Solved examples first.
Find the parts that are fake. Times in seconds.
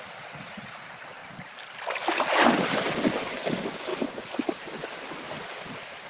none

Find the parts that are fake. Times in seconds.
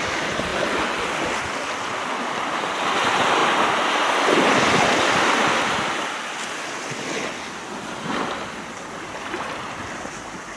none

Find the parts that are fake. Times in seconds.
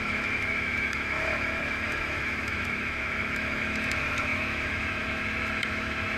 0.0-6.2